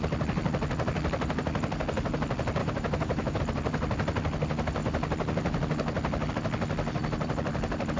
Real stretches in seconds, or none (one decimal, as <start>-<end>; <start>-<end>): 0.0-2.6; 3.4-8.0